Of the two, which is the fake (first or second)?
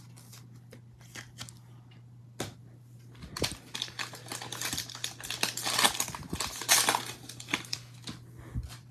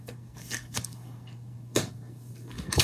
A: second